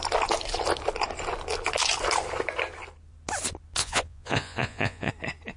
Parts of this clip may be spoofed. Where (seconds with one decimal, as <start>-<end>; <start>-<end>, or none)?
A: 3.8-5.1